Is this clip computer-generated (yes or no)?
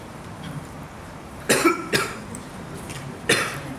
yes